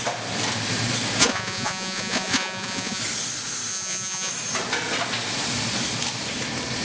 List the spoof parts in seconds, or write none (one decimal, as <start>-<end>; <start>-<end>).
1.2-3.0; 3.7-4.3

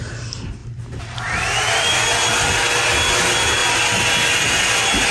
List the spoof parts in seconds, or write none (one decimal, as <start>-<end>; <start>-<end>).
none

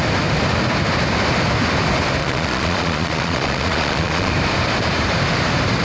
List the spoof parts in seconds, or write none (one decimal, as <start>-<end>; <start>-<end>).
2.2-4.3

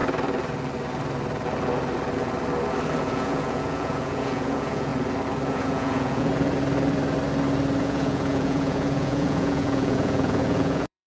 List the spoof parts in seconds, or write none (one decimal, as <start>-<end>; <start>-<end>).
3.0-4.9; 5.5-6.3; 7.8-11.1

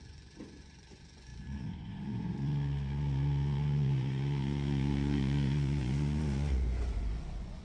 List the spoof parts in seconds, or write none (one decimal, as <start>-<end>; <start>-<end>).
0.0-7.6

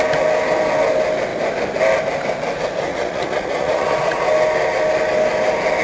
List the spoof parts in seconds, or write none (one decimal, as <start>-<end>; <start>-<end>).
2.9-4.3